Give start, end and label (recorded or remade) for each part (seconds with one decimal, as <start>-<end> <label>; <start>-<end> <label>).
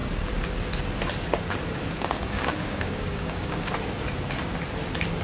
0.0-1.9 recorded; 1.9-3.7 remade; 3.7-5.2 recorded